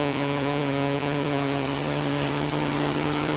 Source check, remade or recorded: remade